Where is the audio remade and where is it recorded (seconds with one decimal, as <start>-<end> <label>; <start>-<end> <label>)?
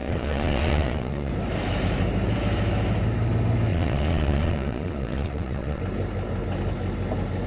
0.0-1.3 remade; 1.3-3.7 recorded; 3.7-5.8 remade; 5.8-7.5 recorded